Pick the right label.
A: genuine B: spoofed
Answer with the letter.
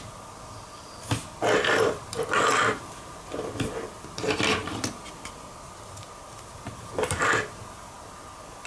A